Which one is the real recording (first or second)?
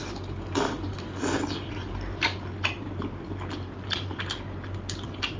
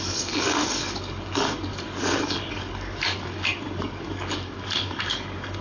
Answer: first